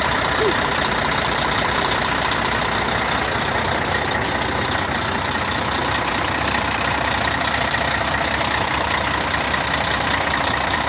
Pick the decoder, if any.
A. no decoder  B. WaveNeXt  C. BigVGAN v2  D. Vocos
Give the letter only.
C